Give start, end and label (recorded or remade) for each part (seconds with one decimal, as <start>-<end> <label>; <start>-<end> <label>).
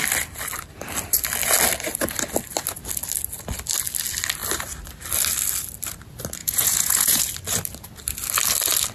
0.0-6.4 recorded; 6.4-7.2 remade; 7.2-8.9 recorded